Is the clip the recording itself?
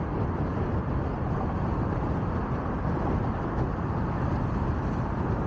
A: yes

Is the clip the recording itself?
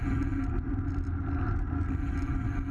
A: yes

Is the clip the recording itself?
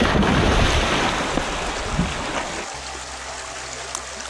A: yes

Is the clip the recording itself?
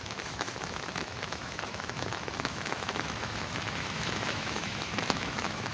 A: no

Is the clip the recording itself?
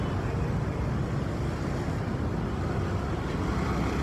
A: yes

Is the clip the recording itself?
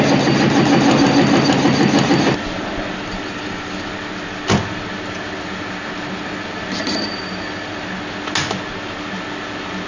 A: yes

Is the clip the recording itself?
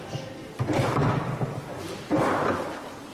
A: yes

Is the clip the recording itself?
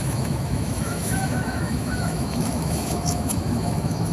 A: no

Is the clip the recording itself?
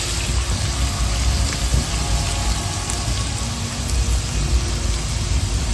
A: yes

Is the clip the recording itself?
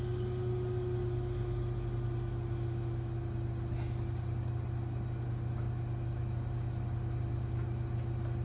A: yes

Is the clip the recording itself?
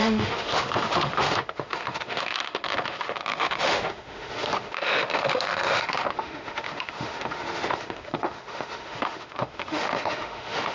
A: no